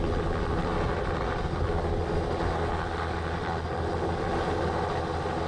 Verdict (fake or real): real